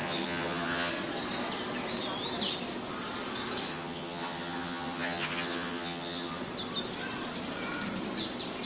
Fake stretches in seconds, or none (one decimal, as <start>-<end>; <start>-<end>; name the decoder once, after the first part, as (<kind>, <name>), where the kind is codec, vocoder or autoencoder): 0.0-0.9 (vocoder, HiFi-GAN); 3.7-6.4